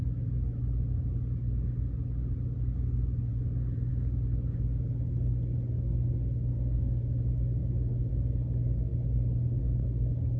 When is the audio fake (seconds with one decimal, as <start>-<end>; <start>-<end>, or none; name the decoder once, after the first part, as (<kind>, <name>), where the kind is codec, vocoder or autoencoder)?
6.5-7.0 (codec, SNAC)